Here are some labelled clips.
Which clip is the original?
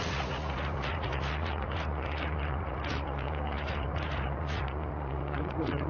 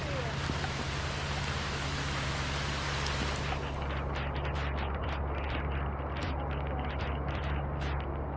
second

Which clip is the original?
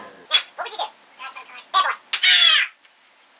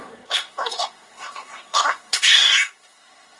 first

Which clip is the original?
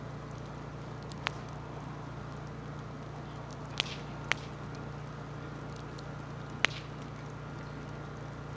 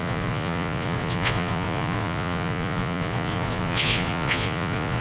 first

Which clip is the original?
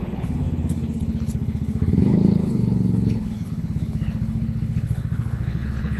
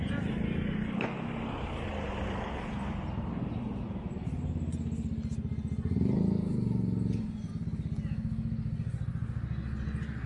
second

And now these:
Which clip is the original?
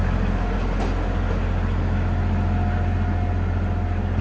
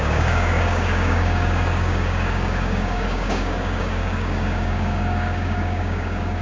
first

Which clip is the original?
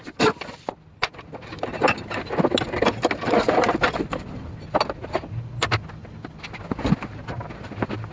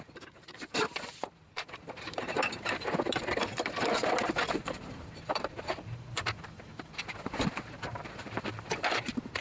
first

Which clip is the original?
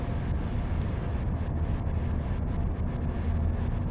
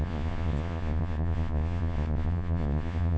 first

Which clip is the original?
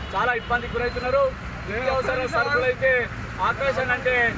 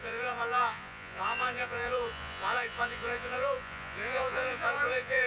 first